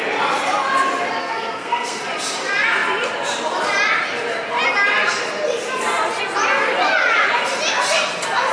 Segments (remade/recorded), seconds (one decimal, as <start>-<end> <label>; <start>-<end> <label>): 0.0-1.2 recorded; 1.2-2.0 remade; 2.0-8.5 recorded